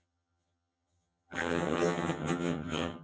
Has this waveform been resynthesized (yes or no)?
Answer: yes